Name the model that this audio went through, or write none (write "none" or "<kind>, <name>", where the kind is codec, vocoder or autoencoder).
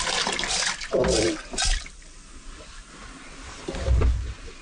none